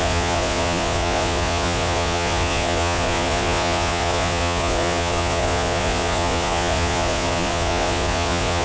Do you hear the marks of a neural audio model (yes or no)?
yes